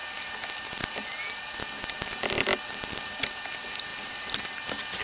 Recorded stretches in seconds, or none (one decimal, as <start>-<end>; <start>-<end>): 0.0-3.9; 4.5-5.0